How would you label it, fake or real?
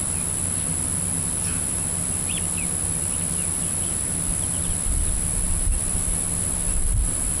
real